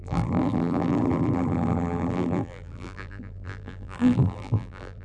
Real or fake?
fake